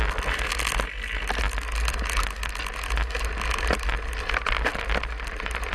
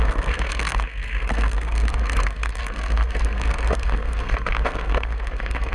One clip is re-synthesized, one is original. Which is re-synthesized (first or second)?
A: second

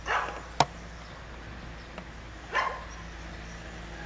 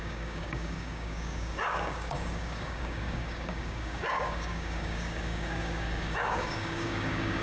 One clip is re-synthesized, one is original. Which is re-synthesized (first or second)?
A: second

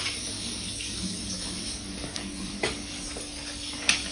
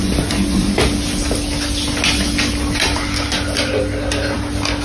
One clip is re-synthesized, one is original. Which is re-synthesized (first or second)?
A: first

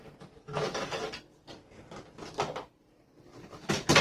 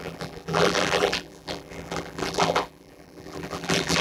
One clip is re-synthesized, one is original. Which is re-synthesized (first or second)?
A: second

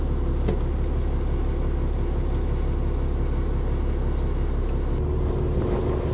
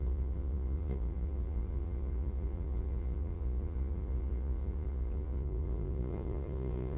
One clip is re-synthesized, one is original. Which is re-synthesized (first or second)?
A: second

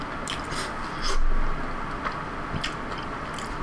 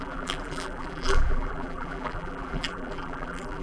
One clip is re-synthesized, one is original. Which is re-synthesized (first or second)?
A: second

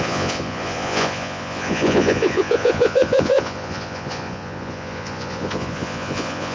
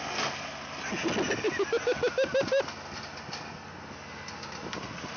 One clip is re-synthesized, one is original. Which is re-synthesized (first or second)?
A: first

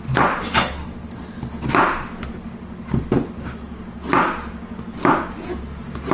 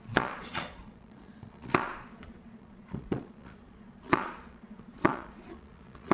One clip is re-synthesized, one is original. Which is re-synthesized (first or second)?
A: second